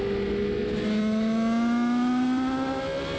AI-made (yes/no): no